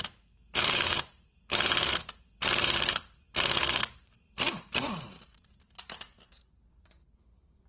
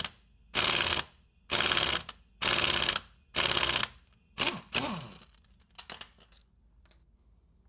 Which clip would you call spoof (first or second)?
first